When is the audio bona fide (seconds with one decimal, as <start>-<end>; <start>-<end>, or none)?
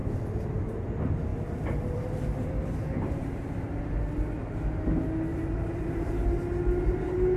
0.9-1.3; 3.5-5.3; 6.2-7.4